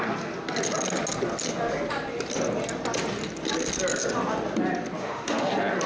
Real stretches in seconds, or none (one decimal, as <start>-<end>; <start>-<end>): 0.0-5.0; 5.5-5.9